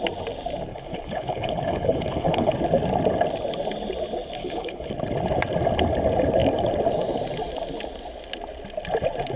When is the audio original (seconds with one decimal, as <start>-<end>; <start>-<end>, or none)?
0.0-0.7; 2.5-4.4; 4.9-9.4